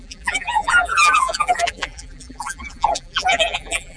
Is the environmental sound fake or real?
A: fake